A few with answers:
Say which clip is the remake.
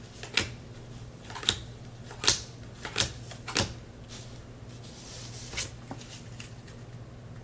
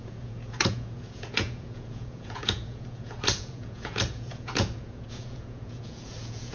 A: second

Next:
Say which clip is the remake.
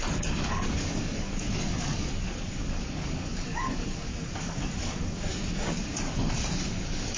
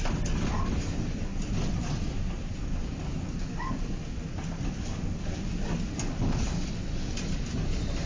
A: first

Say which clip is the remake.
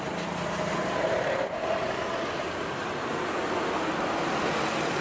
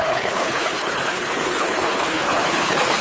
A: second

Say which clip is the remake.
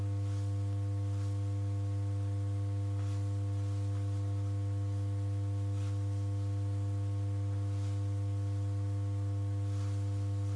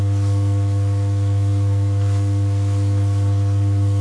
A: second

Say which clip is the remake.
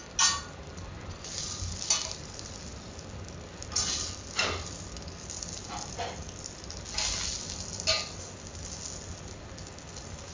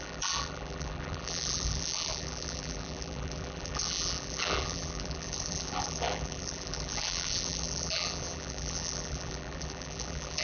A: second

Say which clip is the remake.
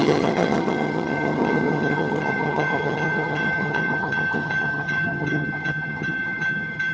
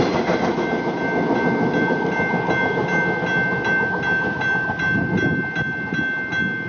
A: first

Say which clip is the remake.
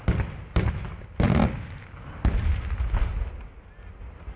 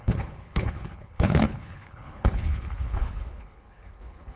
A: second